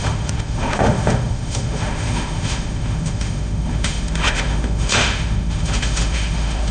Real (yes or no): no